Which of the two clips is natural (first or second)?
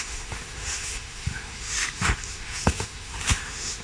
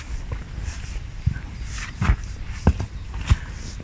second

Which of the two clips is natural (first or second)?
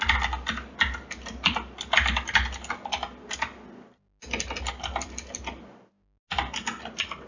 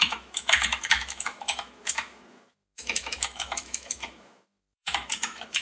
first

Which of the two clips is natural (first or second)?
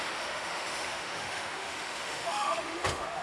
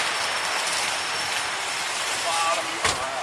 second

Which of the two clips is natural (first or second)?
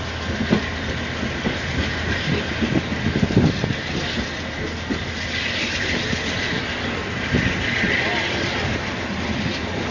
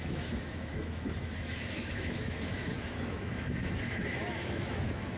first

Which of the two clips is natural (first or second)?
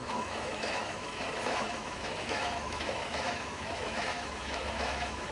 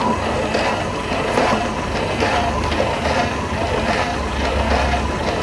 second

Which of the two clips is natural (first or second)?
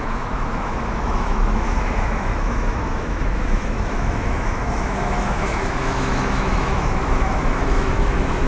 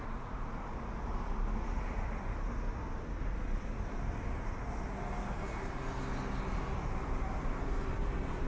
second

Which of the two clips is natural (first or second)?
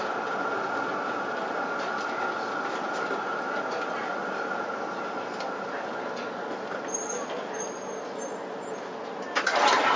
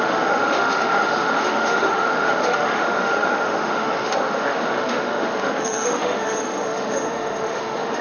first